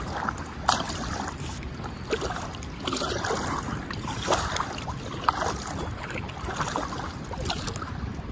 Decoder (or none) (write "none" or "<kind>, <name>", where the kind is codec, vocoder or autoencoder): none